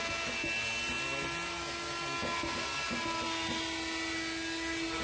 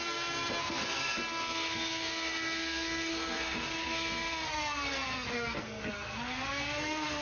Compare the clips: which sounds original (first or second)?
first